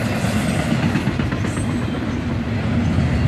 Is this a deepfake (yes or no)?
no